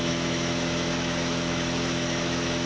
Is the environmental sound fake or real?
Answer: fake